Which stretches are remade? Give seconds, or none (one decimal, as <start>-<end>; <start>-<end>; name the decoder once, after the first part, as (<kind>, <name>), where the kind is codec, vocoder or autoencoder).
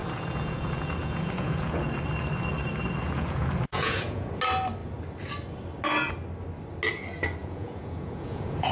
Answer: 0.0-1.9 (vocoder, Vocos); 3.0-4.3; 7.4-8.7